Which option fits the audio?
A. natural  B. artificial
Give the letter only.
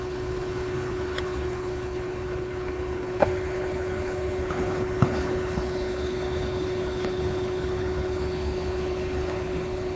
B